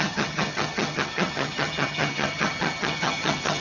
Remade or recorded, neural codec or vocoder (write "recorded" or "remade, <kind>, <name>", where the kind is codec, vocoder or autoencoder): remade, vocoder, HiFi-GAN